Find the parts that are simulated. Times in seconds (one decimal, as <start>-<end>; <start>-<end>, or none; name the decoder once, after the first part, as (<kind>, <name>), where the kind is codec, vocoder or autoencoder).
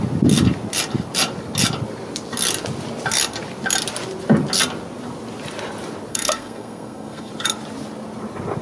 6.1-7.3 (codec, SNAC)